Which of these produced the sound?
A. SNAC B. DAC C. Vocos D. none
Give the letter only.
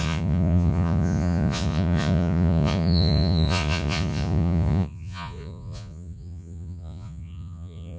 C